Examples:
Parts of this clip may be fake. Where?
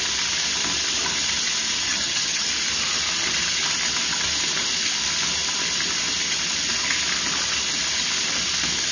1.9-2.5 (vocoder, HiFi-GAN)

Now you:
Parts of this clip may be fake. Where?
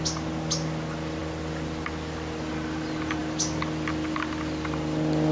none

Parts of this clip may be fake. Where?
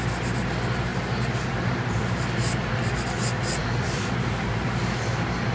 0.9-2.7 (vocoder, BigVGAN v2); 3.6-5.5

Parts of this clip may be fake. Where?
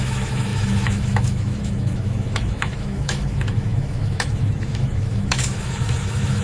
0.0-6.4 (autoencoder, DAC-VAE)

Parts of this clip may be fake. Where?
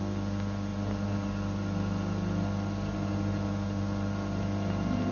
none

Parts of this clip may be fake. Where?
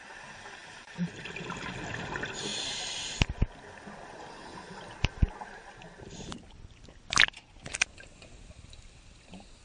0.6-1.2 (vocoder, BigVGAN v2)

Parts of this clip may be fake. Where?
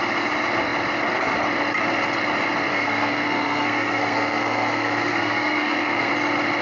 2.7-6.1 (codec, SNAC)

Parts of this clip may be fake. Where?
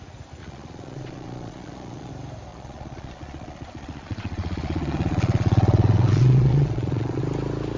0.4-2.1 (vocoder, Vocos); 2.5-7.2